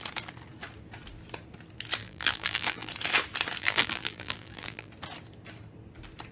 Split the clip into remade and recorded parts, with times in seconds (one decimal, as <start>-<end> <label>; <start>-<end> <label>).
0.0-2.0 recorded; 2.0-2.9 remade; 2.9-3.6 recorded; 3.6-4.9 remade; 4.9-6.3 recorded